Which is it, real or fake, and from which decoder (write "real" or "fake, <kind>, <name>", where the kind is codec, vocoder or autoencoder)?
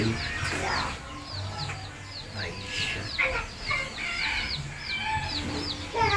real